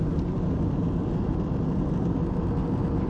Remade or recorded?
recorded